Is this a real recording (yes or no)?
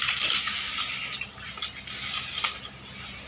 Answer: yes